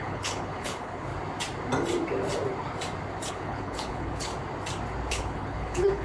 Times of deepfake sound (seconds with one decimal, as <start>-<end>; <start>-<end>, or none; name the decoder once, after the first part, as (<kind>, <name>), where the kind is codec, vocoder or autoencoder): 0.0-1.1 (codec, HILCodec); 3.3-4.3; 5.1-6.0